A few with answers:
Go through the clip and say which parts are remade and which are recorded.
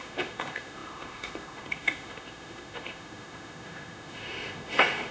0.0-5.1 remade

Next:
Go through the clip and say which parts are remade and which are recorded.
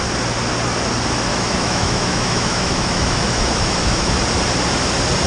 0.0-1.3 recorded; 1.3-4.1 remade; 4.1-5.3 recorded